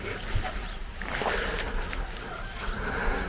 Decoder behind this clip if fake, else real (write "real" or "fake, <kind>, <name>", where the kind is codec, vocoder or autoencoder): real